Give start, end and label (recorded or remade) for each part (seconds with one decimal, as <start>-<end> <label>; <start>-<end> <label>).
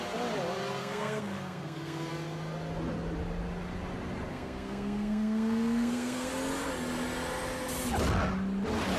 0.0-0.8 recorded; 0.8-2.1 remade; 2.1-4.3 recorded; 4.3-6.3 remade; 6.3-9.0 recorded